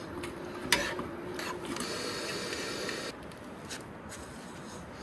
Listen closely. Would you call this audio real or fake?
real